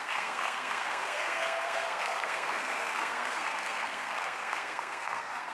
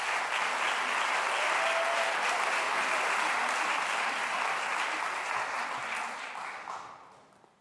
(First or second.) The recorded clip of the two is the second